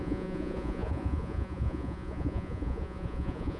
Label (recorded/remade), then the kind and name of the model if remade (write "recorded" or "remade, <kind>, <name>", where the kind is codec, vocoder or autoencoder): remade, vocoder, Vocos